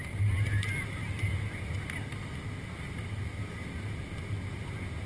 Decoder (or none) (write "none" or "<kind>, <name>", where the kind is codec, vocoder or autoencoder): none